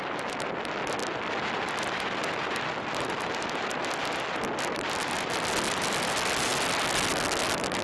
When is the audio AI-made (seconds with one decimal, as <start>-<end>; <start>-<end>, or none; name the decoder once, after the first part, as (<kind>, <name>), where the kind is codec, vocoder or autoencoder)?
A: none